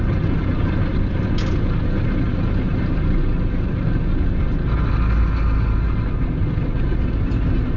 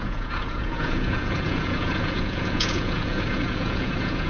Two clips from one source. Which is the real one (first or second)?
first